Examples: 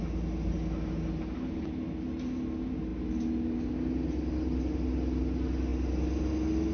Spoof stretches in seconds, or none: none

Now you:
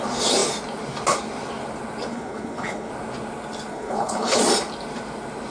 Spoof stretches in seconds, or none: 2.1-2.9 (codec, HILCodec); 3.7-4.4

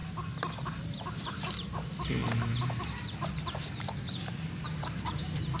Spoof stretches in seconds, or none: 0.8-2.2 (vocoder, BigVGAN v2); 2.8-5.6

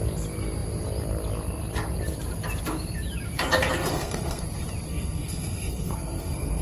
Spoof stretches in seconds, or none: 3.9-4.4 (codec, SNAC); 4.9-6.6

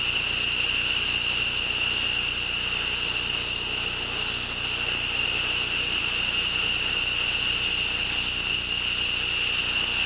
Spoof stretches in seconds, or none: 6.0-6.9 (vocoder, BigVGAN v2)

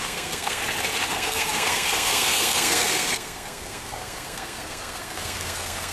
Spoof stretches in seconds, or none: 0.0-0.6 (codec, SNAC); 1.1-5.9

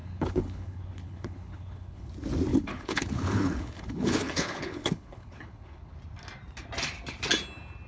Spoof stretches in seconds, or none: 0.0-2.1 (codec, HILCodec); 2.5-5.9

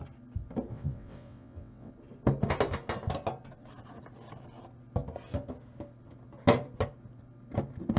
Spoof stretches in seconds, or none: 0.7-1.9 (vocoder, WaveNeXt)